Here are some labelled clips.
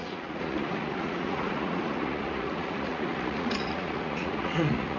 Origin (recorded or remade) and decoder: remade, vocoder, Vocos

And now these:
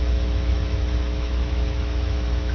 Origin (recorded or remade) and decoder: remade, autoencoder, DAC-VAE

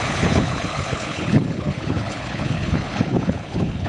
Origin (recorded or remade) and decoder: remade, codec, HILCodec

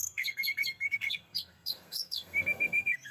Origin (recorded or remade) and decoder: remade, codec, SNAC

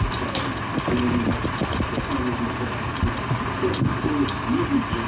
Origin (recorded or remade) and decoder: recorded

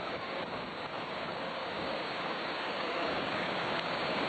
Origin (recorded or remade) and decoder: remade, codec, DAC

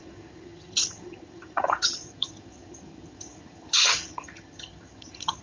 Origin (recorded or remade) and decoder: remade, vocoder, HiFi-GAN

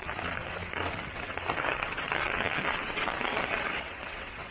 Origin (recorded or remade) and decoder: remade, vocoder, WaveNeXt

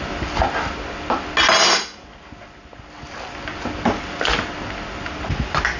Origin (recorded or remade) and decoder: recorded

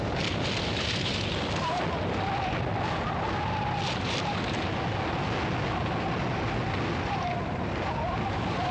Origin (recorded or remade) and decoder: recorded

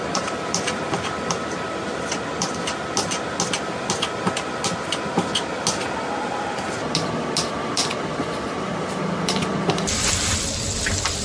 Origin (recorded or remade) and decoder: recorded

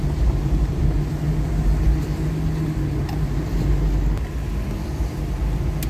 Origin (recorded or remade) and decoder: recorded